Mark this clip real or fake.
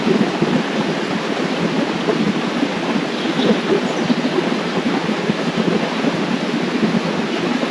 real